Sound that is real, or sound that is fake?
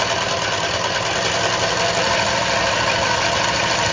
real